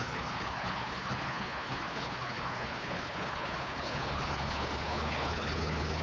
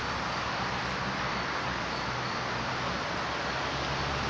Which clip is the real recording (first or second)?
second